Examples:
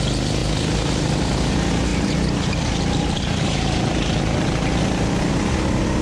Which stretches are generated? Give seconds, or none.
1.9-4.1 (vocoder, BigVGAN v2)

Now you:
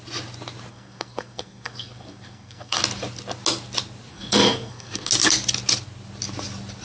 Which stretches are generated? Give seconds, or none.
0.7-2.8 (codec, SNAC); 4.1-5.1

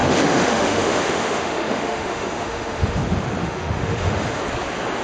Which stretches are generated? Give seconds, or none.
0.0-3.0 (autoencoder, DAC-VAE); 3.4-4.4

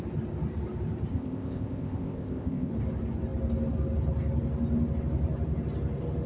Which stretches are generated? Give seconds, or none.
1.1-2.7 (codec, ZipCodec)

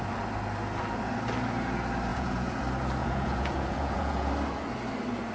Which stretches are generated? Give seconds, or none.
2.1-2.6 (vocoder, Vocos); 3.0-4.3

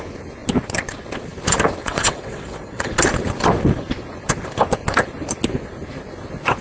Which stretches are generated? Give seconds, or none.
1.8-2.9 (vocoder, WaveNeXt)

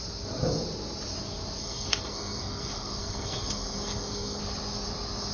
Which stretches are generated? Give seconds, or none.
1.6-4.4 (codec, SNAC)